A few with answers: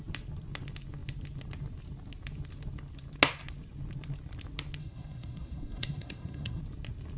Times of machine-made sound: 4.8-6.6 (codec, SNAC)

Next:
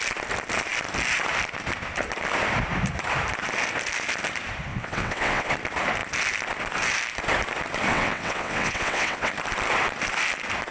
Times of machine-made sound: 4.7-5.5 (vocoder, WaveNeXt); 7.9-9.3

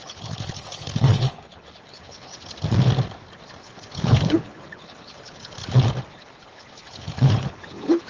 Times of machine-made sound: 0.0-2.3 (codec, HILCodec); 3.6-5.6; 6.1-8.1

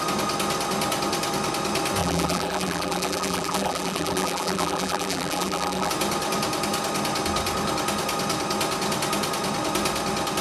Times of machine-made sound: 2.0-5.9 (vocoder, BigVGAN v2)

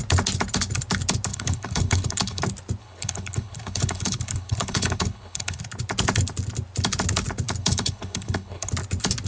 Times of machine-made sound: 1.3-2.4 (codec, HILCodec); 2.8-5.6; 7.6-8.7

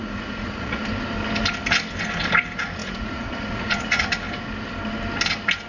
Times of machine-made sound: 0.0-0.8 (vocoder, Vocos); 2.8-4.1

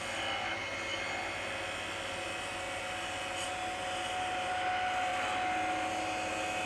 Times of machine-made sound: none

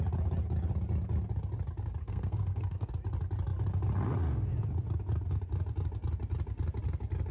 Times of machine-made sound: 2.0-2.9 (codec, SNAC)